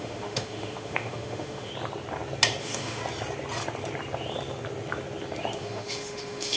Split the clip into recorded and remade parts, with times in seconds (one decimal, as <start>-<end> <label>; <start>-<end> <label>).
0.0-1.7 remade; 1.7-2.6 recorded; 2.6-3.0 remade; 3.0-5.5 recorded; 5.5-6.6 remade